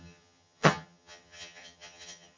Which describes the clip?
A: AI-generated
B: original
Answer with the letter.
A